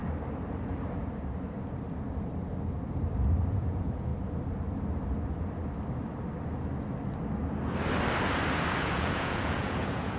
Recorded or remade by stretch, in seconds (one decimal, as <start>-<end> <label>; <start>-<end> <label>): 0.0-3.5 recorded; 3.5-4.1 remade; 4.1-8.8 recorded; 8.8-10.2 remade